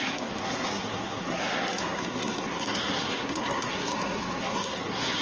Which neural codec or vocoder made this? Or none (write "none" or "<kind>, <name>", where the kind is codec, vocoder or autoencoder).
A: codec, SNAC